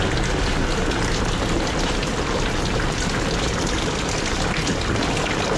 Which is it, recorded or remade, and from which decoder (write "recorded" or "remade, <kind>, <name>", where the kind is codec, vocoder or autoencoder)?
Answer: recorded